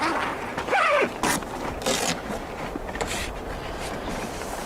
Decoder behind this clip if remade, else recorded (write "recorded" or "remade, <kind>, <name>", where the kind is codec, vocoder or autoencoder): recorded